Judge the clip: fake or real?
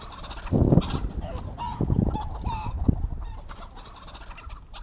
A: real